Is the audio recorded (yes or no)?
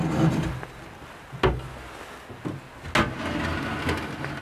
yes